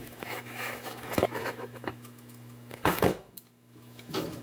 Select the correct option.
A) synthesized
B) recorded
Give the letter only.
A